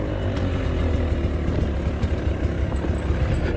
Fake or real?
real